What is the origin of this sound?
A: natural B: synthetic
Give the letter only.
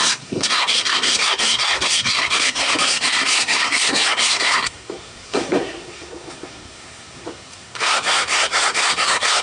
B